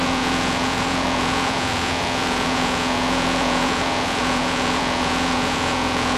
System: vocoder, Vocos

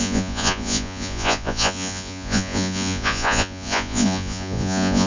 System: vocoder, Vocos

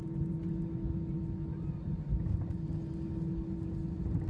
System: none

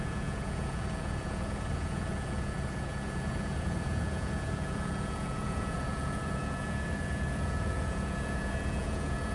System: vocoder, Vocos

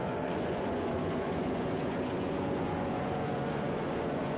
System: vocoder, Vocos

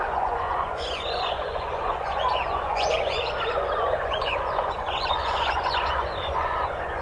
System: vocoder, Vocos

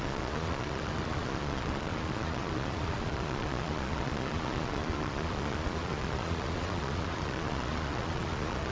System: vocoder, Vocos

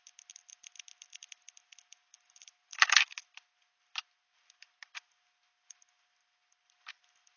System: none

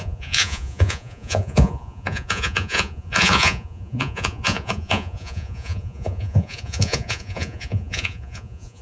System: vocoder, Vocos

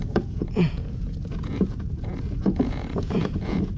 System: vocoder, Vocos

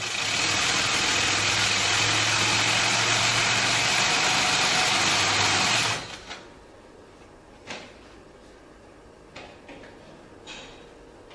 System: none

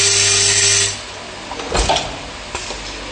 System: none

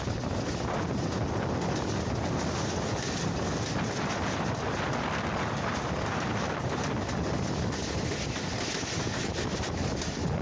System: none